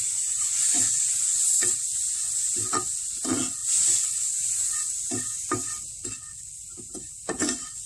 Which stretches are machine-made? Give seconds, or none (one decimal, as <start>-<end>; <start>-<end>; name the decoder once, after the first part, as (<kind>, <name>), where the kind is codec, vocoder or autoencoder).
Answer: 6.7-7.2 (vocoder, BigVGAN v2)